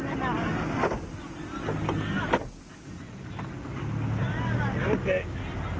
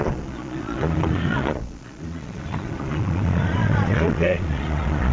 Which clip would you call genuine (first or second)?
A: first